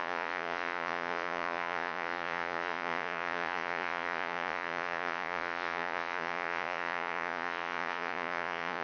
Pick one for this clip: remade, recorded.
remade